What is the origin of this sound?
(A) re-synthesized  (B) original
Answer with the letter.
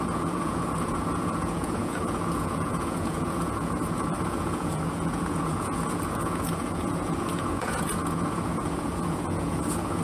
A